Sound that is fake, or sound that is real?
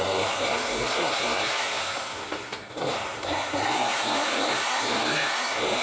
fake